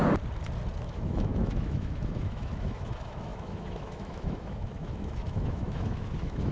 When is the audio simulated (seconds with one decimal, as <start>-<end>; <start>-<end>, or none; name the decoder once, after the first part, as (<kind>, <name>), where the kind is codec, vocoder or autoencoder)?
0.8-6.5 (autoencoder, DAC-VAE)